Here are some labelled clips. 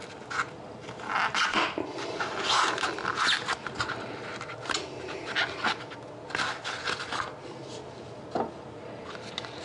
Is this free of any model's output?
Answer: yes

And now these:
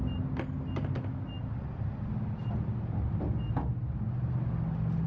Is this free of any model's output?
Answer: yes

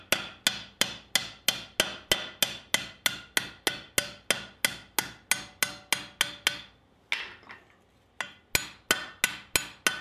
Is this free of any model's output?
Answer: yes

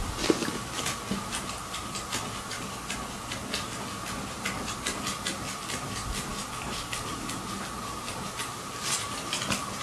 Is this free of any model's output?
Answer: yes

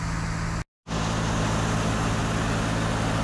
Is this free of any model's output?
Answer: yes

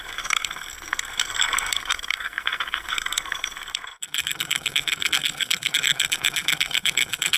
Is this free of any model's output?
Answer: no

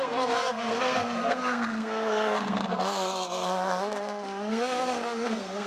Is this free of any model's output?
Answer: no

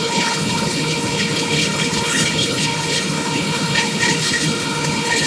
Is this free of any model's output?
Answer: no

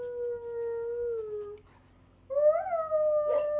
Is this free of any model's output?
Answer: yes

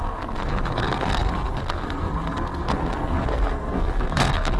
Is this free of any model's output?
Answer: no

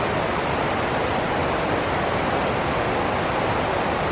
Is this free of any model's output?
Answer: yes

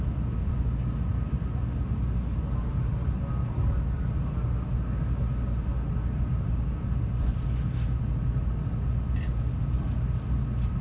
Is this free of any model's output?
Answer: yes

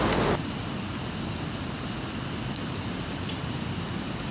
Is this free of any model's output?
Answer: yes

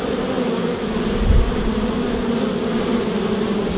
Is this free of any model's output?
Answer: yes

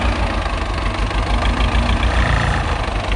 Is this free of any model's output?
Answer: yes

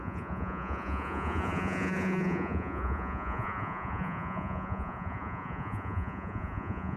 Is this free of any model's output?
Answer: no